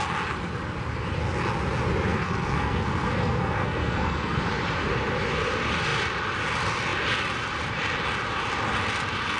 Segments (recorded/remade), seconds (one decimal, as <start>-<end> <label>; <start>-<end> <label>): 0.0-2.1 recorded; 2.1-4.4 remade; 4.4-9.4 recorded